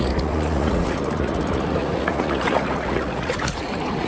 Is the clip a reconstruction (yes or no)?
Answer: yes